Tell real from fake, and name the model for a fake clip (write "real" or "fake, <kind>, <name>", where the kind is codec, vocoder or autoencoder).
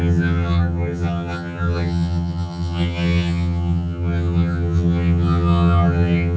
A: fake, vocoder, HiFi-GAN